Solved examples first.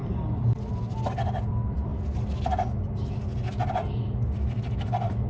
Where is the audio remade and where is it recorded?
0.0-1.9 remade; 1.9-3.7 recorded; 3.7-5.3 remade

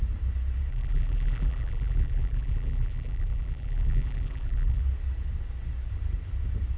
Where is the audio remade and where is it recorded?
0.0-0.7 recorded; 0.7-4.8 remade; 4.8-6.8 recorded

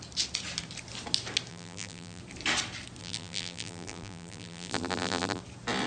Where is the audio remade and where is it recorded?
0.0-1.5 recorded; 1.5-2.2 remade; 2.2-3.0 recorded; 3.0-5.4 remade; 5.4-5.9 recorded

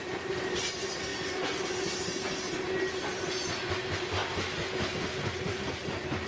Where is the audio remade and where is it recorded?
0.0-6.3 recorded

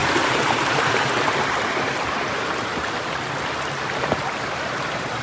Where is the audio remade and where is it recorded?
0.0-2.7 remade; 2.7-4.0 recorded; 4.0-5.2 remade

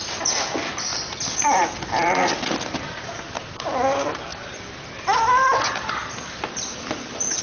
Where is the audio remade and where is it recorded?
0.0-0.9 recorded; 0.9-3.6 remade; 3.6-7.4 recorded

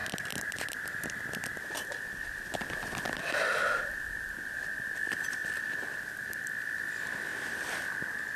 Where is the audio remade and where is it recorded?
0.0-8.4 recorded

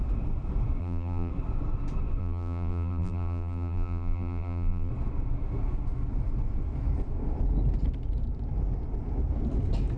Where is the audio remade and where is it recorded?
0.0-0.8 recorded; 0.8-1.3 remade; 1.3-2.2 recorded; 2.2-4.9 remade; 4.9-10.0 recorded